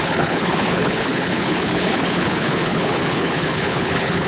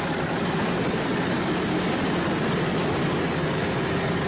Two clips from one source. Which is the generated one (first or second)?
first